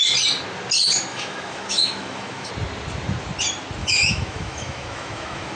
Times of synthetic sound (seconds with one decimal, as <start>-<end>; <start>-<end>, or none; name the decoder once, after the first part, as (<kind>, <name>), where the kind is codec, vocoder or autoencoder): 1.1-2.5 (autoencoder, DAC-VAE); 3.8-5.6